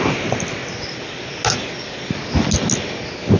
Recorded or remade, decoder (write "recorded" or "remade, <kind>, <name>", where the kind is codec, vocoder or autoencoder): recorded